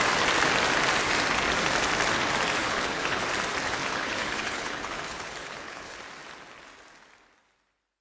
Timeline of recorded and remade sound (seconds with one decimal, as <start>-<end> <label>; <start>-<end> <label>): 0.0-2.6 recorded; 2.6-3.2 remade; 3.2-3.8 recorded; 3.8-6.0 remade; 6.0-8.0 recorded